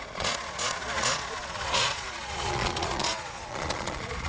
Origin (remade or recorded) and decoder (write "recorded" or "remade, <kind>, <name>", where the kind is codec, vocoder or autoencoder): remade, vocoder, Vocos